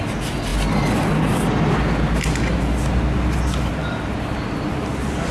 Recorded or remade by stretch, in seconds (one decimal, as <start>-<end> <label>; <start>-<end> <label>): 0.0-5.3 recorded